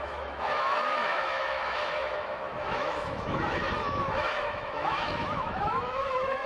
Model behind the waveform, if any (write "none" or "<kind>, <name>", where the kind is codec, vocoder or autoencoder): autoencoder, DAC-VAE